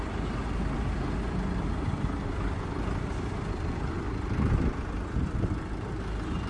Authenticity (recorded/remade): remade